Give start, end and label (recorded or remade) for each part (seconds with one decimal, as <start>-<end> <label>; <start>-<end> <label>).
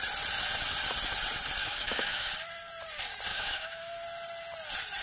0.0-1.6 recorded; 1.6-2.3 remade; 2.3-3.3 recorded; 3.3-3.8 remade; 3.8-5.0 recorded